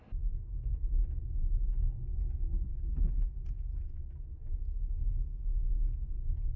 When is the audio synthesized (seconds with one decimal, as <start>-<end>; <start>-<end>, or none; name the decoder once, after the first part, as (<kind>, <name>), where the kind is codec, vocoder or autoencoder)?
none